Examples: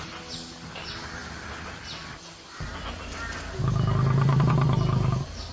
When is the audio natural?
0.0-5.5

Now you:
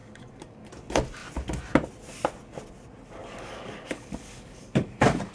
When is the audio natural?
0.7-3.2

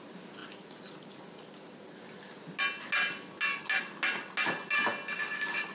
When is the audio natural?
0.0-5.7